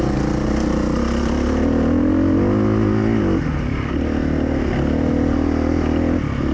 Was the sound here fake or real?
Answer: real